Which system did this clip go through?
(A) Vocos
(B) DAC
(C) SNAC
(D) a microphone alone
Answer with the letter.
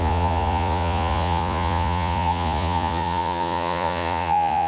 A